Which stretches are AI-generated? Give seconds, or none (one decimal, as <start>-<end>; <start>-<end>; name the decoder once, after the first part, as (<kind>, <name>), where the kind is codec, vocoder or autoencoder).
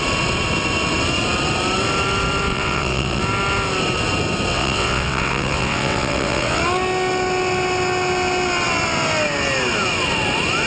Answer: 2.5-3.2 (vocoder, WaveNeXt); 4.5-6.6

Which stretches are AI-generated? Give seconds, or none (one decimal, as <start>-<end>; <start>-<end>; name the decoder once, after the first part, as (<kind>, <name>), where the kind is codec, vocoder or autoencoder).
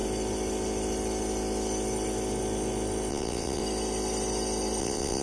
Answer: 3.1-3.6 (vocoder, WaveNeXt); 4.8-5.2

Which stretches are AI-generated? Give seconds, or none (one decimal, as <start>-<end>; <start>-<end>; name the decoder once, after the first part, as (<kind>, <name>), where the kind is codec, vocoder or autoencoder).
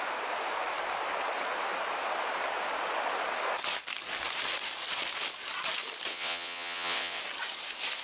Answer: 6.1-7.2 (vocoder, WaveNeXt)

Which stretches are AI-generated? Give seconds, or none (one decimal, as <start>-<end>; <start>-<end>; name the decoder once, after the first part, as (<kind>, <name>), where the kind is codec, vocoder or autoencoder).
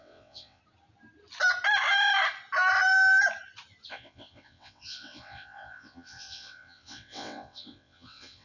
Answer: 0.0-0.6 (vocoder, WaveNeXt); 3.9-8.4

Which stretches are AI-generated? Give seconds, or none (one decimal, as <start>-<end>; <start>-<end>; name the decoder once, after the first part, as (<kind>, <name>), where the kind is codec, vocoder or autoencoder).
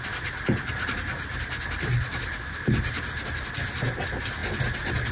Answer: none